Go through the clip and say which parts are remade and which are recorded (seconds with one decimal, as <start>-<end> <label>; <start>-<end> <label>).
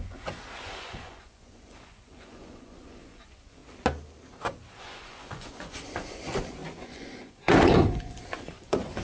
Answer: 0.0-3.6 remade; 3.6-4.8 recorded; 4.8-9.0 remade